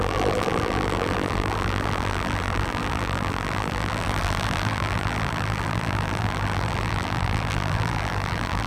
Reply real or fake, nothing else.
fake